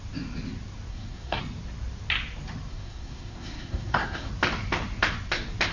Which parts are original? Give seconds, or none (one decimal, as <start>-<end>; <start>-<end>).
0.0-0.9; 1.4-2.7; 4.3-5.7